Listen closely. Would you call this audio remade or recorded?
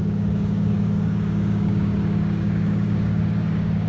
remade